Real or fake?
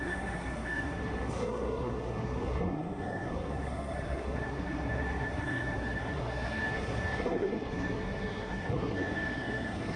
fake